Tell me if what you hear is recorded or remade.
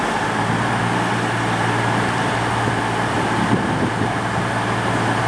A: recorded